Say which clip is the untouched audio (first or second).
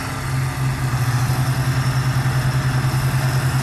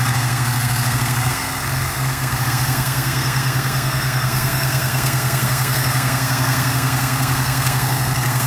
first